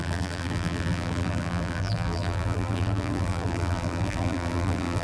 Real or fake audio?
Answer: fake